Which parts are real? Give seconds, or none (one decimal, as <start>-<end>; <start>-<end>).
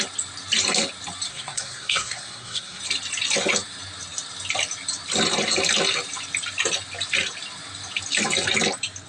0.0-1.3; 2.8-9.1